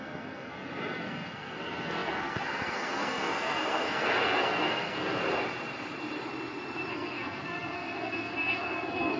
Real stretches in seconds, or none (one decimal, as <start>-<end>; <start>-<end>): 5.2-6.9